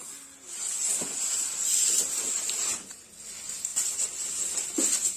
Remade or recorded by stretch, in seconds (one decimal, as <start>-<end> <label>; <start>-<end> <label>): 0.0-5.2 recorded